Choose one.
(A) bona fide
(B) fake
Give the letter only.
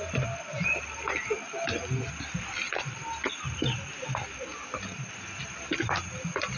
A